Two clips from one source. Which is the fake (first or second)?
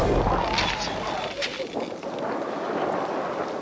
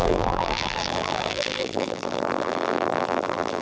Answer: second